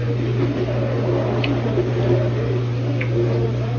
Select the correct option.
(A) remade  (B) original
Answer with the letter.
B